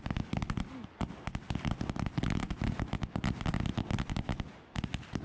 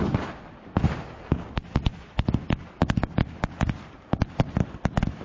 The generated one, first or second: second